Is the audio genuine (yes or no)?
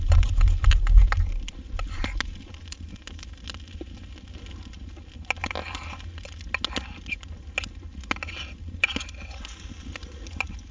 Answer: yes